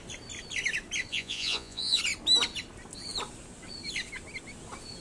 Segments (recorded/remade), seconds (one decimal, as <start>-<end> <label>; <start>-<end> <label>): 0.0-1.1 recorded; 1.1-2.0 remade; 2.0-5.0 recorded